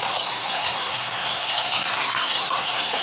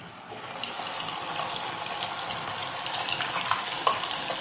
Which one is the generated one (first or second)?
first